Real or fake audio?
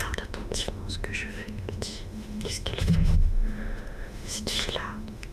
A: fake